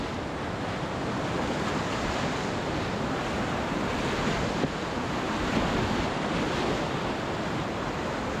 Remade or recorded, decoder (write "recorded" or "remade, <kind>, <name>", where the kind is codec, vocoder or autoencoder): recorded